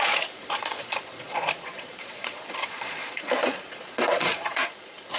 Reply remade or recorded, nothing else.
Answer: remade